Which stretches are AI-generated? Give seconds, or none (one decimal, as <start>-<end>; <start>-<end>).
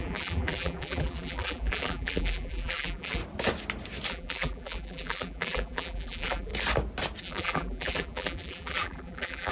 0.0-3.2; 4.1-6.5; 7.2-9.5